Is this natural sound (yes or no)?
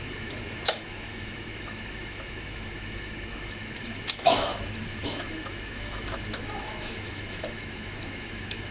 no